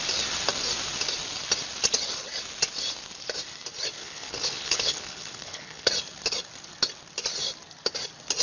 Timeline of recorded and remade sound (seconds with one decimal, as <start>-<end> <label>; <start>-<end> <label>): 0.0-4.0 recorded; 4.0-5.9 remade; 5.9-8.4 recorded